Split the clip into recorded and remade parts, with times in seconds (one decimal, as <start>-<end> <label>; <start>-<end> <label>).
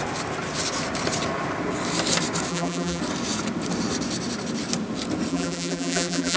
0.0-2.5 recorded; 2.5-3.0 remade; 3.0-5.3 recorded; 5.3-6.4 remade